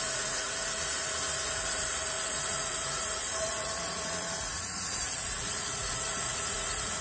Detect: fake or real fake